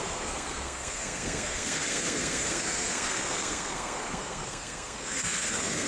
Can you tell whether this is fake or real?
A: fake